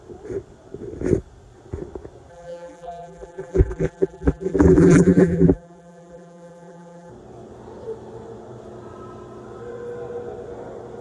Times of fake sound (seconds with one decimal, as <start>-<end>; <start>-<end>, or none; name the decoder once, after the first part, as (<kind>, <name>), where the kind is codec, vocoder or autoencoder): 2.3-7.1 (vocoder, BigVGAN v2)